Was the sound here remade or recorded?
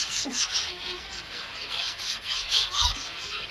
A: remade